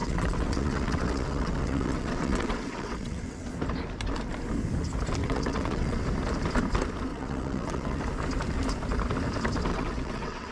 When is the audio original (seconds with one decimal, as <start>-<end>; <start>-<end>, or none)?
3.5-5.2; 6.0-7.1; 8.0-9.7